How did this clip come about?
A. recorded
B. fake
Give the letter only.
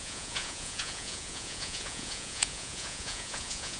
B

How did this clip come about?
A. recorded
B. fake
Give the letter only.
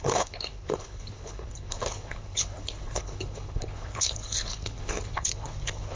B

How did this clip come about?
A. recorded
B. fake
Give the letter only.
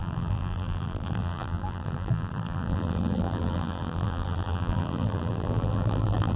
B